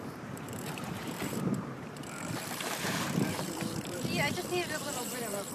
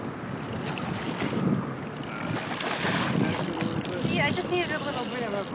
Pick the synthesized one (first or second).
first